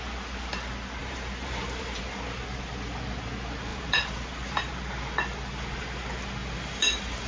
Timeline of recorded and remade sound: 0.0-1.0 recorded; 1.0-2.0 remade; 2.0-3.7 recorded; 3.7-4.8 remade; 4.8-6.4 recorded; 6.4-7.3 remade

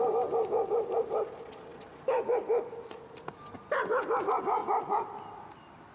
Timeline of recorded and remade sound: 0.0-5.9 recorded

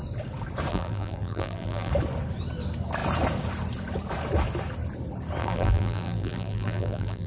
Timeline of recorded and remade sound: 0.0-0.7 recorded; 0.7-1.9 remade; 1.9-5.4 recorded; 5.4-7.3 remade

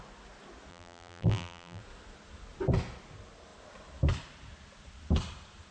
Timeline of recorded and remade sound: 0.0-0.7 recorded; 0.7-1.8 remade; 1.8-5.7 recorded

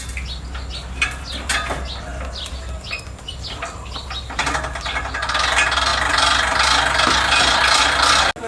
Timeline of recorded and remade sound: 0.0-2.1 recorded; 2.1-4.2 remade; 4.2-8.5 recorded

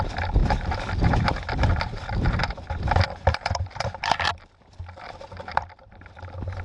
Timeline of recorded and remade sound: 0.0-4.3 remade; 4.3-5.1 recorded; 5.1-6.6 remade